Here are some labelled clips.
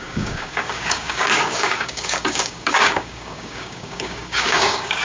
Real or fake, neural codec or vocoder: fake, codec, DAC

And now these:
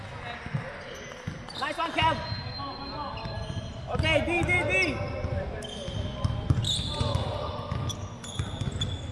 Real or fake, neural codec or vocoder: real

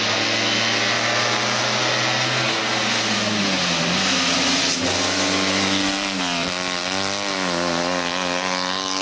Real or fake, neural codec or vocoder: real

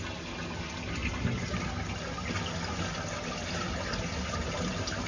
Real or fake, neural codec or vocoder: real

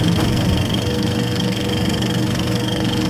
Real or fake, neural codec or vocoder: fake, codec, SNAC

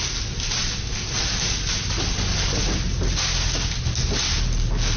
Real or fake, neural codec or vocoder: real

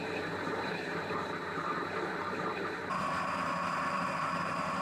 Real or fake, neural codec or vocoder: fake, vocoder, BigVGAN v2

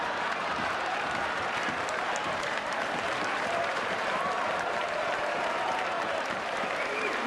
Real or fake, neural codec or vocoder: fake, vocoder, BigVGAN v2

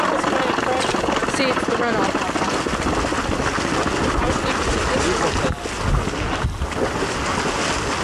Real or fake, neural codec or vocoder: real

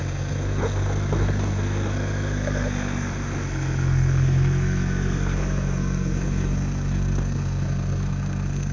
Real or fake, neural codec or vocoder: fake, codec, SNAC